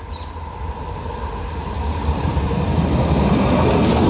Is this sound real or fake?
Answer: real